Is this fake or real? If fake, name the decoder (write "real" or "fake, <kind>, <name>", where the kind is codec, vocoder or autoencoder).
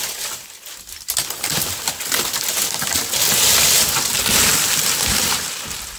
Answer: real